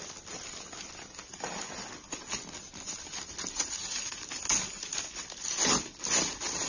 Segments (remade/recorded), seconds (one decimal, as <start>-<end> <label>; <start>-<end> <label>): 0.0-6.7 recorded